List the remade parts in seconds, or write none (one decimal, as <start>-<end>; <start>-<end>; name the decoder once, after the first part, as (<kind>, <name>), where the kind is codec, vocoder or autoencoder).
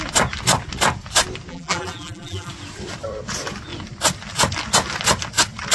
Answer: 1.5-2.5 (vocoder, BigVGAN v2)